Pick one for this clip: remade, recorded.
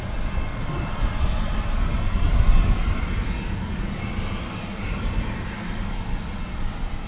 recorded